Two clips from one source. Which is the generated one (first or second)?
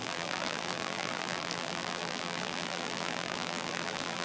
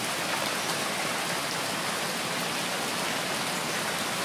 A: first